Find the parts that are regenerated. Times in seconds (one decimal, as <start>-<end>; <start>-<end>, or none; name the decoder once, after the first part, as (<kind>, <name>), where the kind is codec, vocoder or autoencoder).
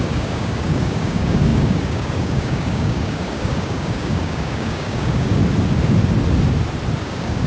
0.0-5.4 (codec, DAC); 7.0-7.5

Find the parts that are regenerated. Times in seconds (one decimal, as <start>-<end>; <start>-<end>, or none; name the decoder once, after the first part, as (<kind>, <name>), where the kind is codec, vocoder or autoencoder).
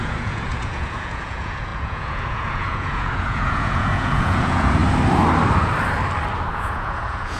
0.0-4.8 (vocoder, Vocos); 6.5-7.4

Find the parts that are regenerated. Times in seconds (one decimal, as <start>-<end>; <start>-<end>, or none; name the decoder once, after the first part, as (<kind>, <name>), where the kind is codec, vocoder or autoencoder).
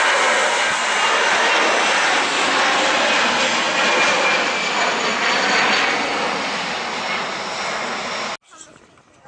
none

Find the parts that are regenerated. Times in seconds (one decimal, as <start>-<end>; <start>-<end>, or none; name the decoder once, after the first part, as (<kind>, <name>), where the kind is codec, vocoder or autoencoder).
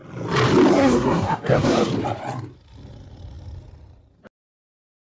0.7-1.9 (codec, SNAC)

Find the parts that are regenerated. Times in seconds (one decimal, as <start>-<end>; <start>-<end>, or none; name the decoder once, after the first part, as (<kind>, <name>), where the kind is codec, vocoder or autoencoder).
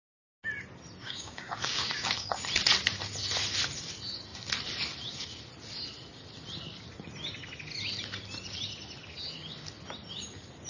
1.0-2.4 (codec, DAC)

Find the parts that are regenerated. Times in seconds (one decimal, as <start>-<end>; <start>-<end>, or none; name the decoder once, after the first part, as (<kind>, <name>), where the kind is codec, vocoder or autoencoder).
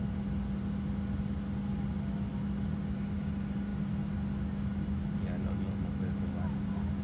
none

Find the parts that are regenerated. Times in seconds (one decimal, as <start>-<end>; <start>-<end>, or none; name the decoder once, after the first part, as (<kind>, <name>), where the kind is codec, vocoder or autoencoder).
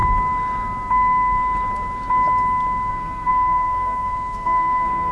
2.9-5.1 (codec, SNAC)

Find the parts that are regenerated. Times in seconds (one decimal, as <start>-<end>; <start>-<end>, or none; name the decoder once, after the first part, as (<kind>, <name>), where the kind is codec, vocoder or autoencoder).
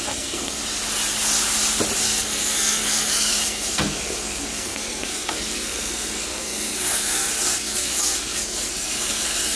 0.0-0.6 (codec, SNAC); 2.0-9.6